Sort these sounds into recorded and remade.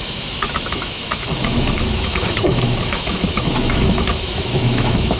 remade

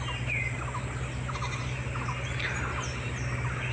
recorded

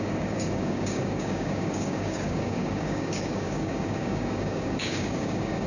remade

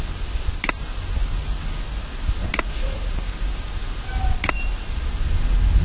recorded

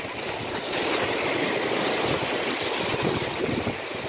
recorded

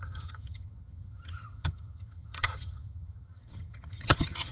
remade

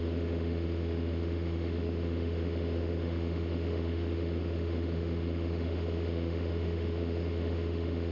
remade